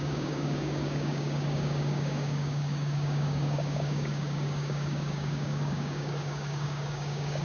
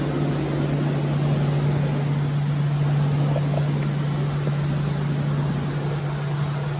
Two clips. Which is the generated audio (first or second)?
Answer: first